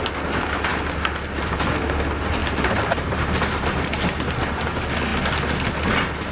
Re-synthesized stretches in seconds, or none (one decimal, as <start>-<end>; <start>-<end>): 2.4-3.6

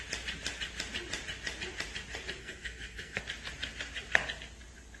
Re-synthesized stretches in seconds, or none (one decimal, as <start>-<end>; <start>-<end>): 2.4-3.2

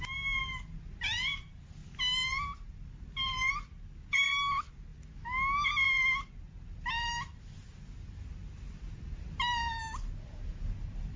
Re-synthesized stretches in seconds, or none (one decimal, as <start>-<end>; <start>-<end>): none

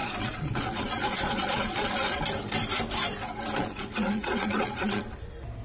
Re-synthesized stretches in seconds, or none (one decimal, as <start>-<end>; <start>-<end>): 0.0-2.2; 3.6-5.0

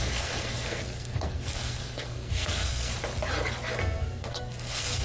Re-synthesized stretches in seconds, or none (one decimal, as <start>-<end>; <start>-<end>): 0.0-2.9; 3.7-5.0

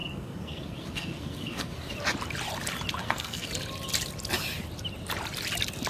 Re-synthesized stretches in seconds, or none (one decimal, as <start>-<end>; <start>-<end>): 0.0-1.9; 3.0-3.5